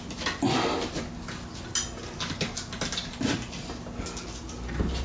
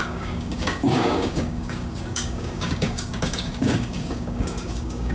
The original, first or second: first